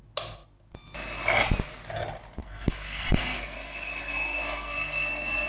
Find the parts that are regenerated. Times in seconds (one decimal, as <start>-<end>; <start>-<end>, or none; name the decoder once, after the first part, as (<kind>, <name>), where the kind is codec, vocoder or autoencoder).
2.4-5.5 (codec, SNAC)

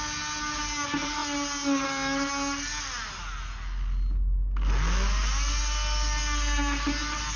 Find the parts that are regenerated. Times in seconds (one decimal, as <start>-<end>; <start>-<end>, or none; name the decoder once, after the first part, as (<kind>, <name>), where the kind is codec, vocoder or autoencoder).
none

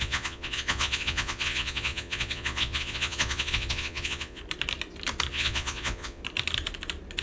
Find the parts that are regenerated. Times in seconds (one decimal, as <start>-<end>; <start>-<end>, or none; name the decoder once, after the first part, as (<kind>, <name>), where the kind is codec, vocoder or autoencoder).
0.0-4.4 (vocoder, Vocos); 5.3-6.2

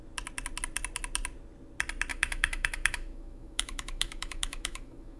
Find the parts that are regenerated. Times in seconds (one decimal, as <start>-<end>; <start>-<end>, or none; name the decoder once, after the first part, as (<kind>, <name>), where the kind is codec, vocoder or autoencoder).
2.1-5.2 (autoencoder, DAC-VAE)

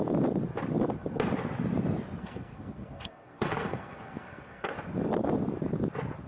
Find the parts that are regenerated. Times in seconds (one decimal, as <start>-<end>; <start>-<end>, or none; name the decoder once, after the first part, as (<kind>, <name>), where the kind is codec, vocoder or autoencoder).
2.2-4.7 (codec, SNAC)